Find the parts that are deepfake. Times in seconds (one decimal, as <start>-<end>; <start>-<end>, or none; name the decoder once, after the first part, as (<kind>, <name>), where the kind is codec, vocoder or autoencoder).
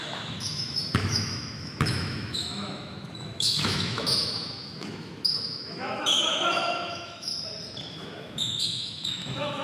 0.0-7.3 (autoencoder, DAC-VAE); 7.9-9.6